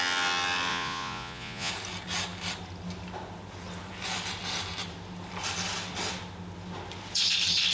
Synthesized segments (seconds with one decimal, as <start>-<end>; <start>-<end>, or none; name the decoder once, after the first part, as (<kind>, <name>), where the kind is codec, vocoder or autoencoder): 0.7-1.7 (vocoder, Vocos)